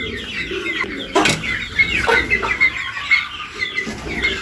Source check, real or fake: real